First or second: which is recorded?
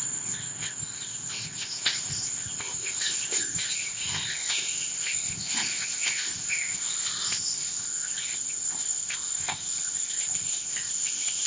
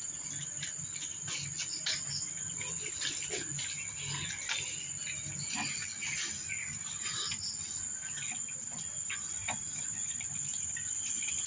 second